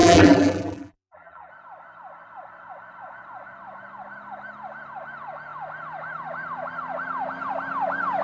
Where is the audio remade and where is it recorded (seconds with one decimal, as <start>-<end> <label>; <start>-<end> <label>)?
0.0-1.5 remade; 1.5-8.2 recorded